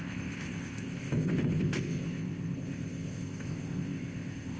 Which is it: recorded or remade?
remade